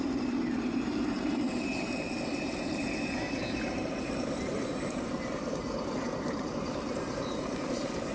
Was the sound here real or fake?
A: fake